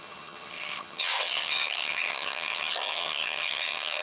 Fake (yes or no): yes